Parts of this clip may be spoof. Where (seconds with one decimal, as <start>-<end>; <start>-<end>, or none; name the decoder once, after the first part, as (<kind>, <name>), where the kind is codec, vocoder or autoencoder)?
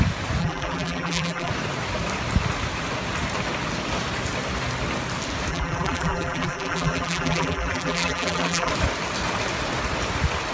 0.4-1.5 (vocoder, BigVGAN v2); 5.5-8.7